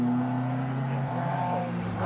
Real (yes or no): yes